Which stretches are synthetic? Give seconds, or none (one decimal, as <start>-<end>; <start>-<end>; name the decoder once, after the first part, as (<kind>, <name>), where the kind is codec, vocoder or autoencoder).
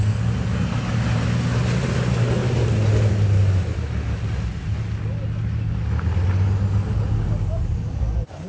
none